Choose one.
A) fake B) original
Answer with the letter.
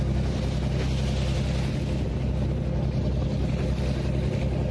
B